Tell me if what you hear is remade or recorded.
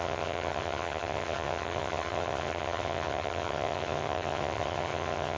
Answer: remade